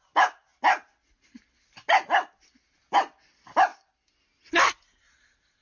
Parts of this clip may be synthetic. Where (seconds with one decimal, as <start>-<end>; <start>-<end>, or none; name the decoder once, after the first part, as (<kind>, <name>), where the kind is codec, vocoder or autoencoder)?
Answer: none